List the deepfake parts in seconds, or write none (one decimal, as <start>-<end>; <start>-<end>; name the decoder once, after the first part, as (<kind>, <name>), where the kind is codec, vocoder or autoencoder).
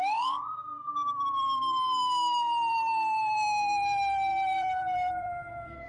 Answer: 0.0-5.9 (vocoder, BigVGAN v2)